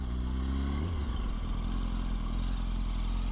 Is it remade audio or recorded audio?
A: recorded